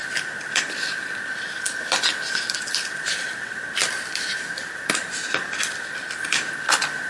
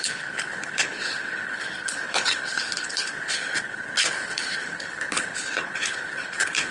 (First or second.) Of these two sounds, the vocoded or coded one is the second